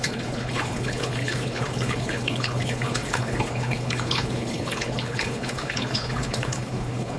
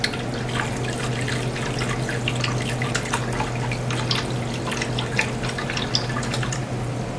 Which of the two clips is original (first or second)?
second